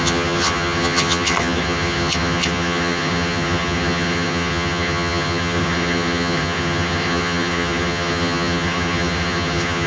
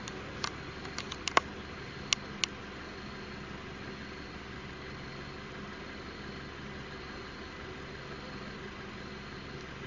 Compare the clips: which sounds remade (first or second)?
first